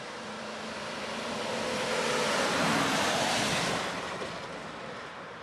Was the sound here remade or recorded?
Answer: remade